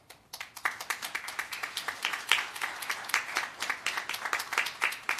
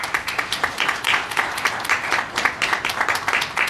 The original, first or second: first